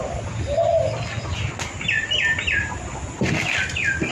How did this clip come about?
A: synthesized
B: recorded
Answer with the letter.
B